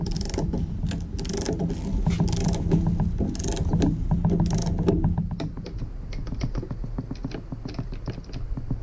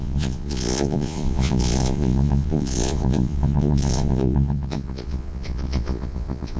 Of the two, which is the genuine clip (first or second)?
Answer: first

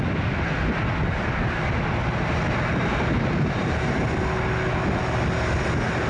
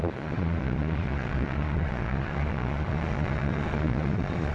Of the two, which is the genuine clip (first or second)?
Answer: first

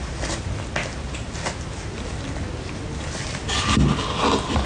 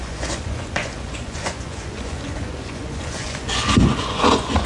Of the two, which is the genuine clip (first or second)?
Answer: first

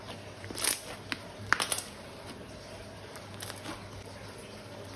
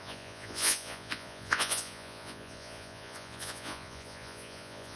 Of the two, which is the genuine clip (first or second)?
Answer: first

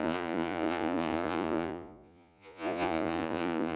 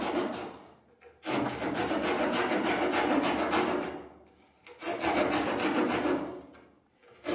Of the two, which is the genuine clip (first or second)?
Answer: second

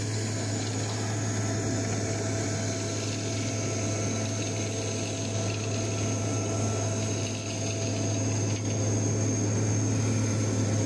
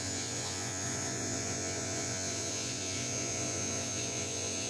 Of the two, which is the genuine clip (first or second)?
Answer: first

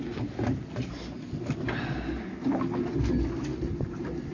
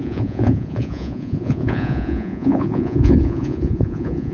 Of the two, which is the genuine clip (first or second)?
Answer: first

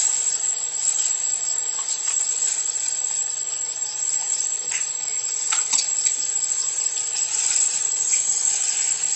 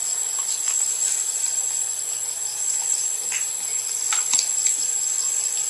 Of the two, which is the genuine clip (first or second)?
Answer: second